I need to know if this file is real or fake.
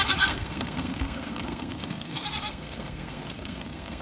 fake